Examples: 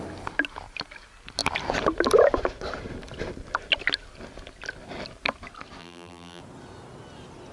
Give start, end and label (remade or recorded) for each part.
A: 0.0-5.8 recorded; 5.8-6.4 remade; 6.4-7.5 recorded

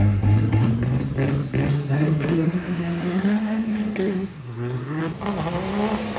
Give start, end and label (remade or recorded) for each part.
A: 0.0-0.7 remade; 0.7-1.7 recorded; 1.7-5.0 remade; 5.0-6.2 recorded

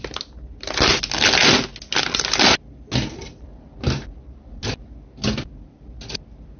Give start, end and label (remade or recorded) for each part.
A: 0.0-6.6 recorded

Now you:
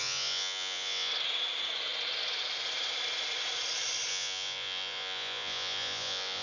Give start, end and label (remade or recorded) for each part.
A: 0.0-1.1 remade; 1.1-4.1 recorded; 4.1-6.4 remade